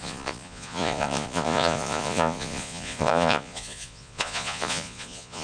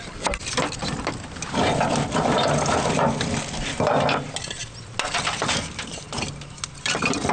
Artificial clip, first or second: first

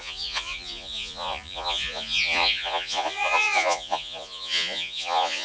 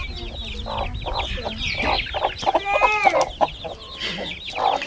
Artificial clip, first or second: first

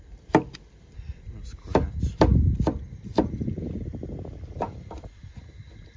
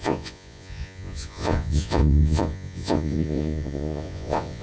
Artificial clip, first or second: second